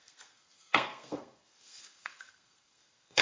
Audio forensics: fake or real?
fake